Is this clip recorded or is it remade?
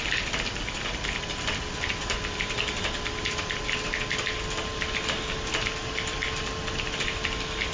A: recorded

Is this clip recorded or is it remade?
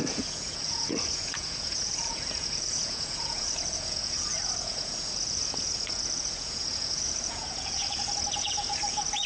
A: remade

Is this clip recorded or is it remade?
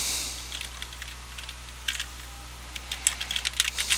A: recorded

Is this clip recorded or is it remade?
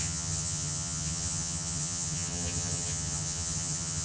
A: remade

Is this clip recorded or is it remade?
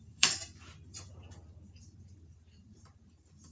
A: remade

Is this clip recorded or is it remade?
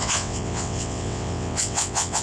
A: remade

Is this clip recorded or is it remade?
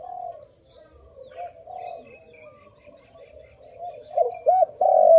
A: recorded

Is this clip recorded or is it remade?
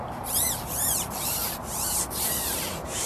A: remade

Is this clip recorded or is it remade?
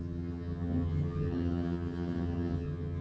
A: remade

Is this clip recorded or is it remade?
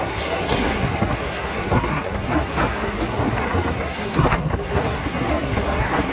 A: remade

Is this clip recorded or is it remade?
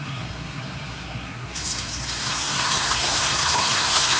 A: remade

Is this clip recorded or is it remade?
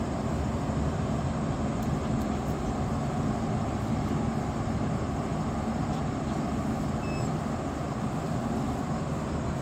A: recorded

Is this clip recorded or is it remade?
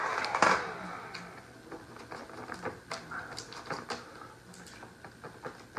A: recorded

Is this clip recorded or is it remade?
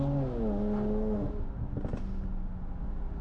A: recorded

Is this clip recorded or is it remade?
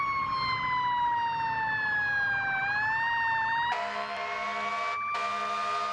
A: recorded